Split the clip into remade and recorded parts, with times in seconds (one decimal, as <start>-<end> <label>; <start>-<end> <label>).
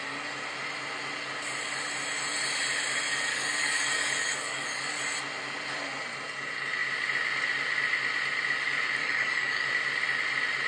0.0-3.3 recorded; 3.3-5.0 remade; 5.0-9.0 recorded; 9.0-9.7 remade; 9.7-10.7 recorded